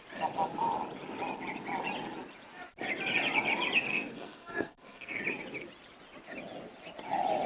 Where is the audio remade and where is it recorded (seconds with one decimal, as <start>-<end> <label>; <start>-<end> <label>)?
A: 0.0-3.9 recorded; 3.9-5.2 remade; 5.2-7.5 recorded